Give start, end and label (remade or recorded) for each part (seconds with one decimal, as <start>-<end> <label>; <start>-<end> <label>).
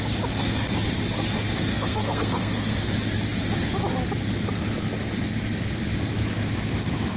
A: 0.0-1.7 recorded; 1.7-2.8 remade; 2.8-7.2 recorded